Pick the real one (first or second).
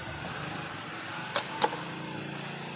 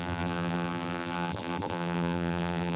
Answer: first